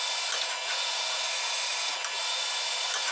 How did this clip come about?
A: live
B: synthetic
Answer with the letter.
A